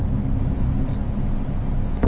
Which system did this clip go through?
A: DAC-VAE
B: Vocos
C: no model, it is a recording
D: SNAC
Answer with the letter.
C